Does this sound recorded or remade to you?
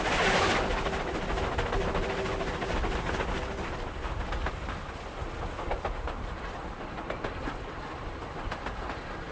recorded